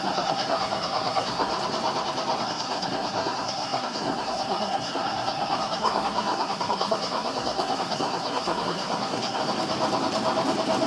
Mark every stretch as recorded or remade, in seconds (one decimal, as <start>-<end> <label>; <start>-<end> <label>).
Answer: 0.0-1.5 remade; 1.5-2.4 recorded; 2.4-9.4 remade; 9.4-10.9 recorded